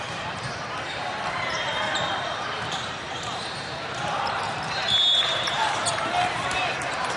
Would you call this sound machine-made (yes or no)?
yes